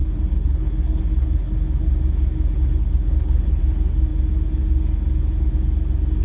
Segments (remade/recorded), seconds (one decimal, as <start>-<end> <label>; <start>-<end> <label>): 0.0-1.0 remade; 1.0-2.8 recorded; 2.8-3.6 remade; 3.6-6.2 recorded